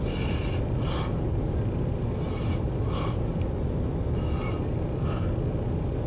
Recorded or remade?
recorded